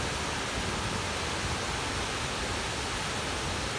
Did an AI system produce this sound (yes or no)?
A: no